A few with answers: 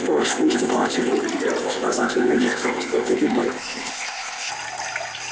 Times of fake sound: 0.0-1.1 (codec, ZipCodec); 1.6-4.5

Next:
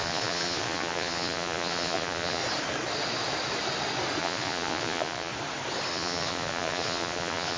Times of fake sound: 0.0-2.4 (vocoder, Vocos); 4.2-5.3; 5.9-7.6

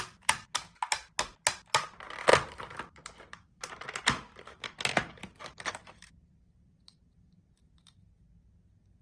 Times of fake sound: 2.3-3.7 (vocoder, BigVGAN v2); 4.5-7.4

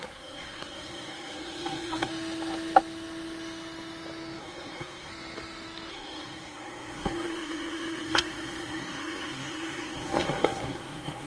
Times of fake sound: 0.0-2.1 (codec, SNAC); 4.4-5.1; 5.9-11.3

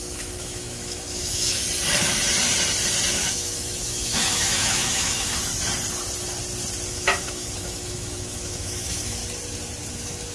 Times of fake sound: 0.0-1.6 (autoencoder, DAC-VAE); 3.1-5.5; 6.9-9.2; 9.9-10.3

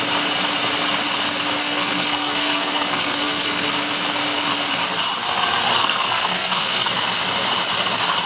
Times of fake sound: 1.6-3.7 (codec, SNAC); 5.8-6.9